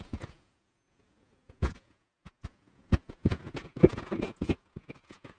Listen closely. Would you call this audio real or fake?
fake